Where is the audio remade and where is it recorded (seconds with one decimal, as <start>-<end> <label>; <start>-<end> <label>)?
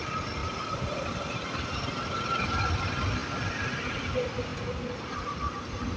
0.0-6.0 remade